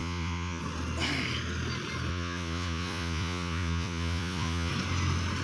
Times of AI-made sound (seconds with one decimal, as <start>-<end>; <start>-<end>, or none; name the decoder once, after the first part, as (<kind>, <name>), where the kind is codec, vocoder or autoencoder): 0.0-0.6 (vocoder, Vocos); 2.1-4.7